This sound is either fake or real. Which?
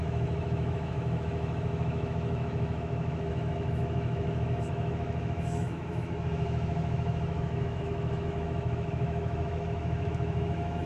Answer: fake